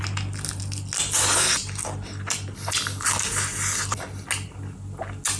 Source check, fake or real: real